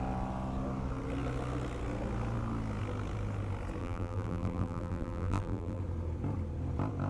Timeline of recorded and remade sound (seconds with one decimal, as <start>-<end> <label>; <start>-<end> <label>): 0.0-3.8 recorded; 3.8-5.8 remade; 5.8-7.1 recorded